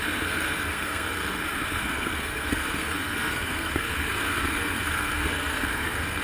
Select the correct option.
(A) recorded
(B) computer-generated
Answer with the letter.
B